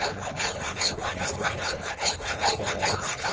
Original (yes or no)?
no